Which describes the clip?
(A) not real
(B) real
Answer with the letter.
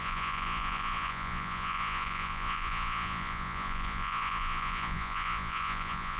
A